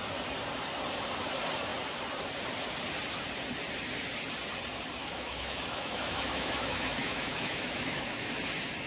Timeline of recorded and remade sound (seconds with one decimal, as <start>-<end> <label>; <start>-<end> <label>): 0.0-5.0 recorded; 5.0-8.3 remade; 8.3-8.9 recorded